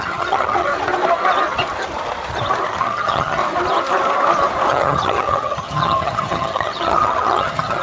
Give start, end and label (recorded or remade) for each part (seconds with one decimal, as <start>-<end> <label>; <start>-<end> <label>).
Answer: 0.0-0.7 remade; 0.7-2.7 recorded; 2.7-3.4 remade; 3.4-4.7 recorded; 4.7-7.8 remade